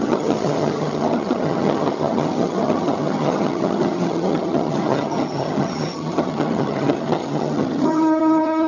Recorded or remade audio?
remade